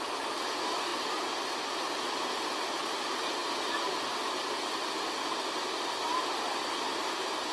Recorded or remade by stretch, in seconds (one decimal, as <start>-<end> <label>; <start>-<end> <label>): 0.0-7.5 recorded